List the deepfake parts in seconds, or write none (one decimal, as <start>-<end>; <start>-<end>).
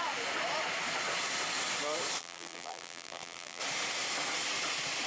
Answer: 2.2-3.6